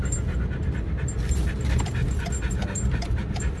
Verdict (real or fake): real